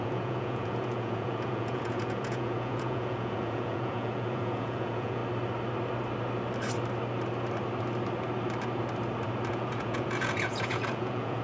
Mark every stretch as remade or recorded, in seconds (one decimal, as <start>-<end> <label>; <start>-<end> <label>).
0.0-5.2 remade; 5.2-9.5 recorded; 9.5-11.4 remade